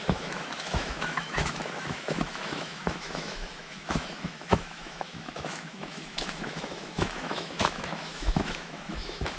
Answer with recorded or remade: remade